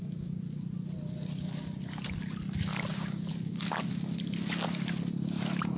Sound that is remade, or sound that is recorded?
recorded